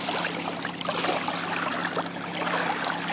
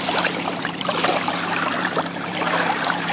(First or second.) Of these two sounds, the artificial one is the second